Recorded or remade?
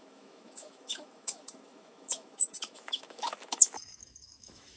remade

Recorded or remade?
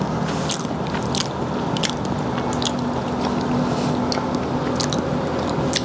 recorded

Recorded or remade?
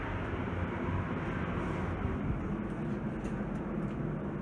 recorded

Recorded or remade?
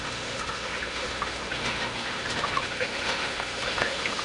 remade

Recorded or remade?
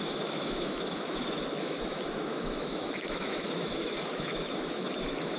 remade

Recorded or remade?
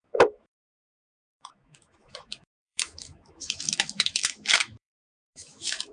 remade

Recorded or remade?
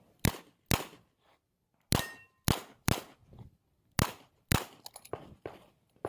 recorded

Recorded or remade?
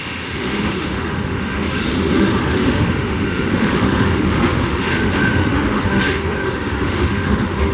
remade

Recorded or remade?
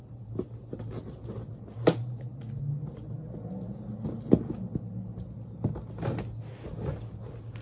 recorded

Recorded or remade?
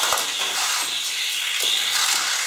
recorded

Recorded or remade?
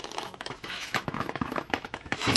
remade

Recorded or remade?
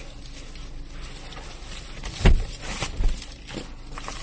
recorded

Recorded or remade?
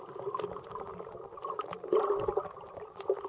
recorded